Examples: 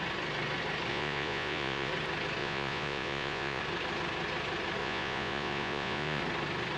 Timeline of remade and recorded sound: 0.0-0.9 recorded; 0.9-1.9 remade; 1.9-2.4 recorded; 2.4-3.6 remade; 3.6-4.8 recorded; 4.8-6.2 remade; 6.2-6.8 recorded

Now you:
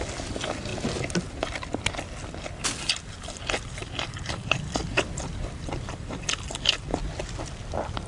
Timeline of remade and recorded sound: 0.0-0.7 remade; 0.7-3.1 recorded; 3.1-8.1 remade

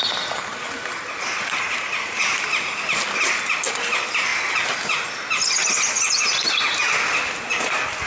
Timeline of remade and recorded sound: 0.0-8.1 recorded